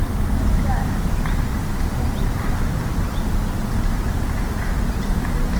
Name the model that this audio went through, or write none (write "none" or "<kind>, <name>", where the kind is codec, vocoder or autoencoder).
vocoder, BigVGAN v2